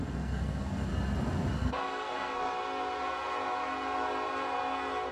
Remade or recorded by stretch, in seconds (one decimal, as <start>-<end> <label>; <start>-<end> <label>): 0.0-0.9 remade; 0.9-1.5 recorded; 1.5-2.6 remade; 2.6-5.1 recorded